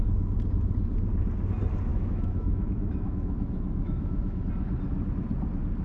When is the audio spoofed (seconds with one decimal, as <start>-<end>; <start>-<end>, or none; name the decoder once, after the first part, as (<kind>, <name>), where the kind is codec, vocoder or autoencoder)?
1.9-4.4 (autoencoder, DAC-VAE)